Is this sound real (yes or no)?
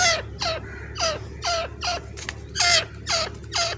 yes